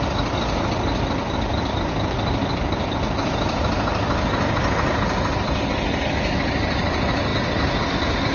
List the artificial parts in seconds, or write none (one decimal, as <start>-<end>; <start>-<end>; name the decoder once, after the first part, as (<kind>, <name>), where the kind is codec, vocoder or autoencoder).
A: none